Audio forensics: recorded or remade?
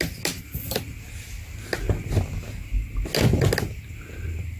recorded